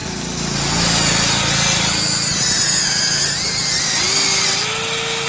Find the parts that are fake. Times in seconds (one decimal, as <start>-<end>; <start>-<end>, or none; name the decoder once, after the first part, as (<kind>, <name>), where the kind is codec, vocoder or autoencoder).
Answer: none